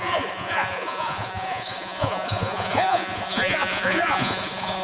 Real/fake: fake